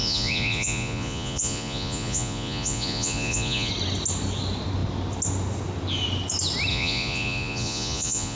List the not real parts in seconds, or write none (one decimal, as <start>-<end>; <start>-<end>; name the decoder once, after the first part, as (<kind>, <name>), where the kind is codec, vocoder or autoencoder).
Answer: 0.0-3.7 (vocoder, Vocos); 6.7-8.4